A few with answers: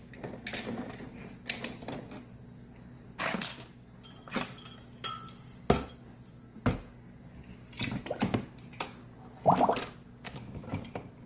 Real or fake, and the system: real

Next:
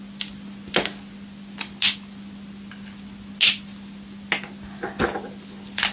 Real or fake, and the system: real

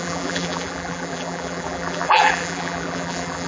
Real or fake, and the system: fake, vocoder, BigVGAN v2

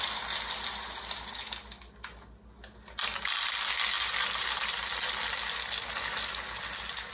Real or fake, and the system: real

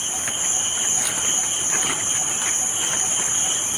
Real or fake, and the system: fake, vocoder, BigVGAN v2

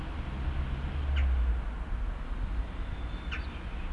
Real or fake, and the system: real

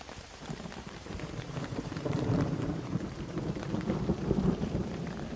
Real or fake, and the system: fake, vocoder, BigVGAN v2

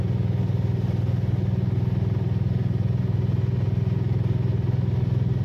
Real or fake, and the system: real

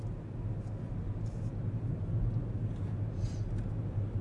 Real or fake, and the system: real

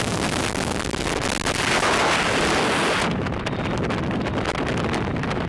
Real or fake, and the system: real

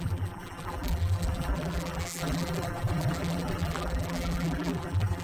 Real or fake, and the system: fake, vocoder, BigVGAN v2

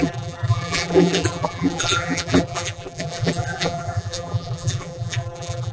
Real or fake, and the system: fake, vocoder, BigVGAN v2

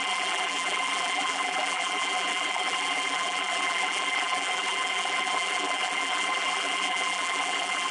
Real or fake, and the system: fake, vocoder, BigVGAN v2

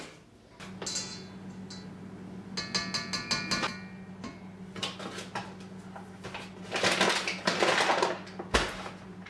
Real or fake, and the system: real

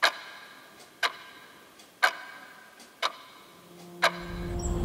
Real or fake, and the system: real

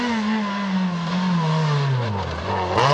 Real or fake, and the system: real